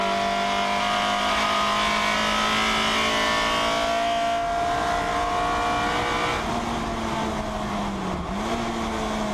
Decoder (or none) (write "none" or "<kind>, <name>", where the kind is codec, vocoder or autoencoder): none